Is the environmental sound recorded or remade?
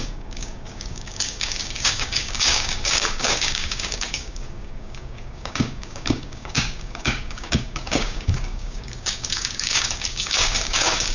remade